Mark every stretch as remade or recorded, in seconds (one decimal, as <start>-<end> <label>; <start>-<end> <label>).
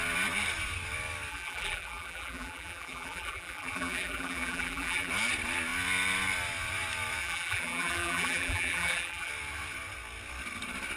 0.0-1.3 recorded; 1.3-5.1 remade; 5.1-7.2 recorded; 7.2-9.3 remade; 9.3-11.0 recorded